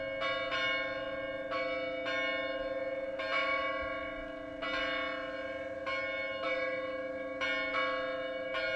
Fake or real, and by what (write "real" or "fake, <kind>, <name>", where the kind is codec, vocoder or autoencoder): real